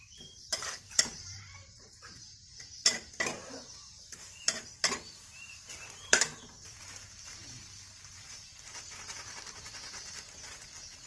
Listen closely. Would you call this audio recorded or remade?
remade